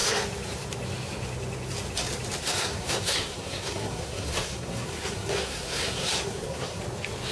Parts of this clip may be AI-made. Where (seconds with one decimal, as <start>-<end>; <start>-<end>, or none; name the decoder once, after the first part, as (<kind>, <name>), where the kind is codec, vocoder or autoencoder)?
2.4-6.8 (codec, SNAC)